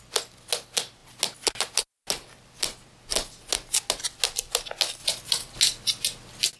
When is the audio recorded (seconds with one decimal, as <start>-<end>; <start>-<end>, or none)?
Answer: 0.0-5.0; 5.6-6.6